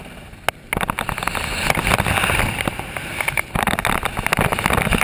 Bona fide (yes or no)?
yes